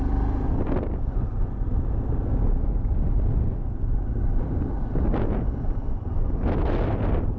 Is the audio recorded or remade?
recorded